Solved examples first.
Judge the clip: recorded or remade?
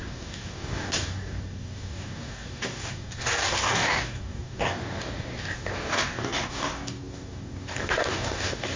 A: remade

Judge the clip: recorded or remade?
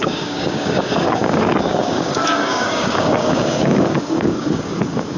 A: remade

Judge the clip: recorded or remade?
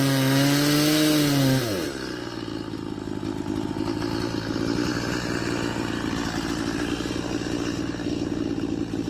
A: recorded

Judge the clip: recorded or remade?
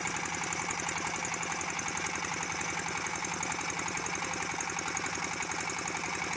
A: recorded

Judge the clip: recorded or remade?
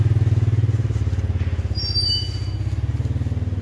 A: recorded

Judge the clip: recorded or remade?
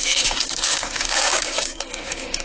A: remade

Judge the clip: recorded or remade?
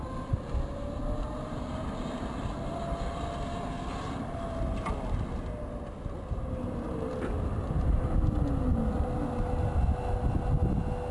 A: recorded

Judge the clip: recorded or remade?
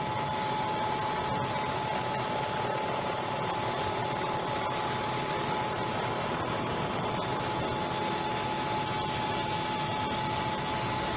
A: recorded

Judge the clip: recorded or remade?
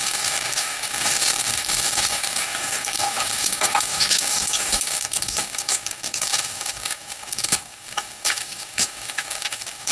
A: remade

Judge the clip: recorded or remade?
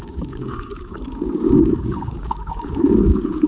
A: remade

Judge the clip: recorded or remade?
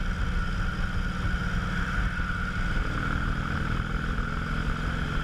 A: recorded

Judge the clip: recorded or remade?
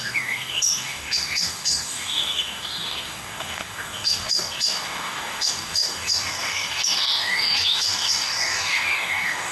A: remade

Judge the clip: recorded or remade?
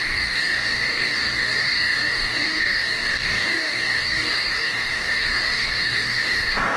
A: remade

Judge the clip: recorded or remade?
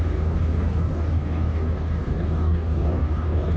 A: remade